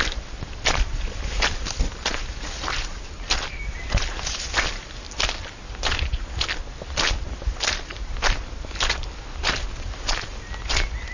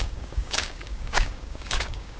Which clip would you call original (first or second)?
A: first